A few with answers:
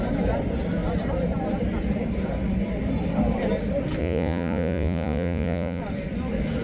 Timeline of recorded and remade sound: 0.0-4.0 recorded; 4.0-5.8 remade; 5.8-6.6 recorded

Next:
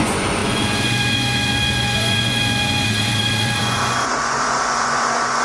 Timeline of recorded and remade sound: 0.0-5.4 remade

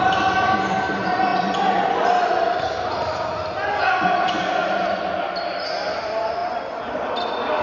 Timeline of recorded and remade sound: 0.0-7.6 recorded

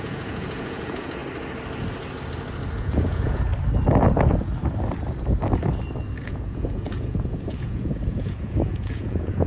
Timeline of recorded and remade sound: 0.0-1.2 remade; 1.2-2.8 recorded; 2.8-3.5 remade; 3.5-6.2 recorded; 6.2-9.5 remade

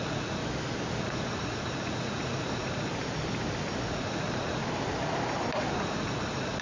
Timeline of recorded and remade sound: 0.0-0.4 remade; 0.4-1.0 recorded; 1.0-2.9 remade; 2.9-3.9 recorded; 3.9-4.6 remade; 4.6-5.7 recorded; 5.7-6.6 remade